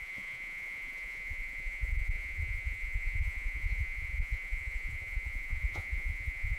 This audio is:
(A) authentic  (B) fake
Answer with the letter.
B